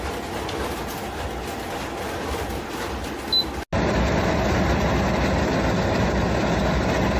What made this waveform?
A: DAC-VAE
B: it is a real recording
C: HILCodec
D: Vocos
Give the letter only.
B